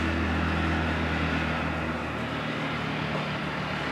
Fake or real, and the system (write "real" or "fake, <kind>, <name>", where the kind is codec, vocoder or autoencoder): real